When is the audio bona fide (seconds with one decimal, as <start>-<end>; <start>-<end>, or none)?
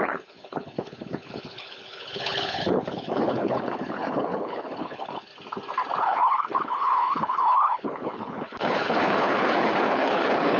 5.3-6.0